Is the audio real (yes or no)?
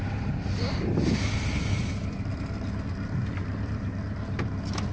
yes